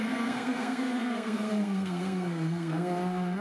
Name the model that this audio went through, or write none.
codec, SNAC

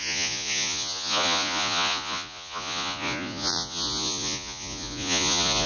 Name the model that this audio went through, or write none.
vocoder, Vocos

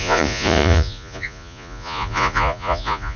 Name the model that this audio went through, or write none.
vocoder, Vocos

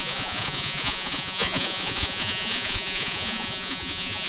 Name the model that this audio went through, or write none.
vocoder, Vocos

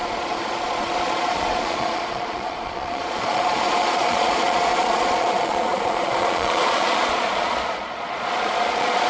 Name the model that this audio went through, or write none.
vocoder, Vocos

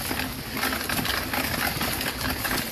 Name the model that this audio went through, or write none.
none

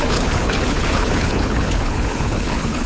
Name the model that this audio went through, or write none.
codec, HILCodec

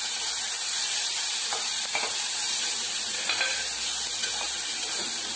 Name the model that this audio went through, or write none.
vocoder, BigVGAN v2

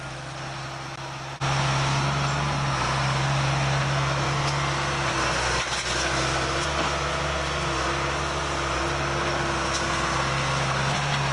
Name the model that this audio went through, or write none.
none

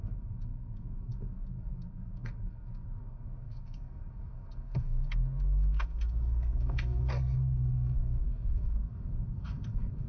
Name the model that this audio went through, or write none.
codec, SNAC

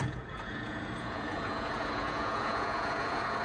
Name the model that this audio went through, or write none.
vocoder, Vocos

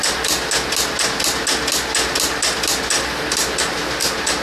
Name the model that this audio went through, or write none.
none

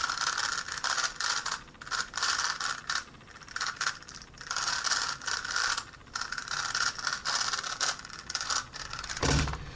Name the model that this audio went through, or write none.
vocoder, BigVGAN v2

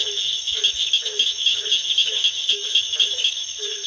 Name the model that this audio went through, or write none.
autoencoder, DAC-VAE